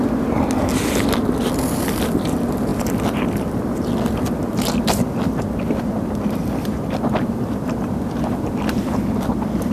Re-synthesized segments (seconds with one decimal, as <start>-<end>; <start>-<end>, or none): none